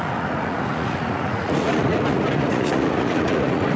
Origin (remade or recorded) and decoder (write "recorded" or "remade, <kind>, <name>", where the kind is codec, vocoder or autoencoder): remade, vocoder, Vocos